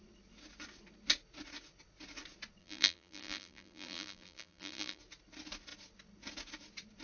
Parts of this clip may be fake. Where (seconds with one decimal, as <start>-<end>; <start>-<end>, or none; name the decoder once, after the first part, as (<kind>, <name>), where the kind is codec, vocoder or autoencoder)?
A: 2.6-5.0 (vocoder, BigVGAN v2)